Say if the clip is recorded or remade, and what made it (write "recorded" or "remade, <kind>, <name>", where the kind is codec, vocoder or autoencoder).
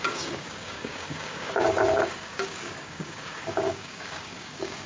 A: remade, codec, DAC